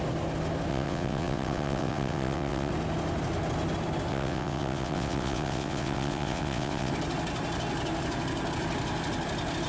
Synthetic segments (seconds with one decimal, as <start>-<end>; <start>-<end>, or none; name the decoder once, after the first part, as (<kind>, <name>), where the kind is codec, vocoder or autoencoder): 0.7-2.7 (vocoder, WaveNeXt); 4.1-6.9